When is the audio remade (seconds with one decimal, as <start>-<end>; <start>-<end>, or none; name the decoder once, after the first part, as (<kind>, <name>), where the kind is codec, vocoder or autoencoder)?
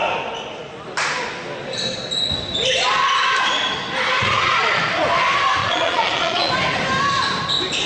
4.2-4.8 (vocoder, Vocos); 5.6-6.5